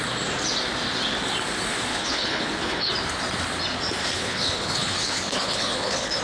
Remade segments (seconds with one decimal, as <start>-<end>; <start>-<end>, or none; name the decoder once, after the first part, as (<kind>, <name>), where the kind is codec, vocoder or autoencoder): 1.9-2.9 (codec, HILCodec); 4.0-6.2